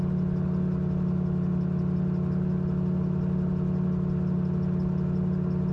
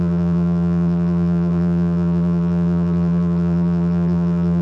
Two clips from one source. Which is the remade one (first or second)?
second